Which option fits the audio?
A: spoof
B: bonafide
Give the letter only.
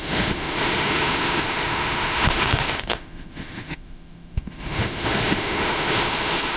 A